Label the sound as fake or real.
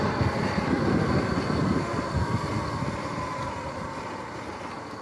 real